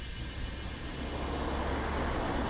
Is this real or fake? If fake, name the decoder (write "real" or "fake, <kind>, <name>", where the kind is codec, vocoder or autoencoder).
real